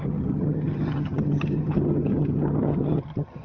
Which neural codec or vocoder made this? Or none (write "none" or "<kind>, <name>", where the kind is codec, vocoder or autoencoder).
vocoder, HiFi-GAN